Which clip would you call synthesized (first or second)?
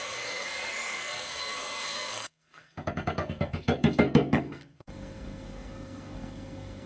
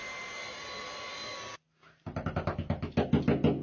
first